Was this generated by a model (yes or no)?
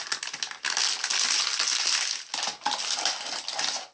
no